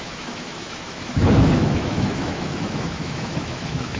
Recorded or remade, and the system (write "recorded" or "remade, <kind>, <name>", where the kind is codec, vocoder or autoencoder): remade, autoencoder, DAC-VAE